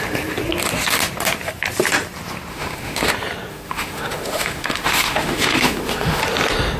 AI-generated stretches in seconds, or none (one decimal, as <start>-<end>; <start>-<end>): 2.5-3.1; 3.5-6.2